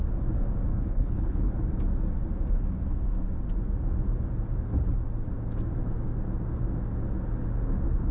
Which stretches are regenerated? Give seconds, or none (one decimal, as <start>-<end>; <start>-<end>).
0.7-1.5